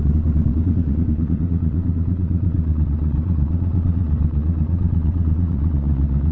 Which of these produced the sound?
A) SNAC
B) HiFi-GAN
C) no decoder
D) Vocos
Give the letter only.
D